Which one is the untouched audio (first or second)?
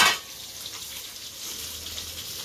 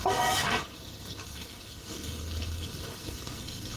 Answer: first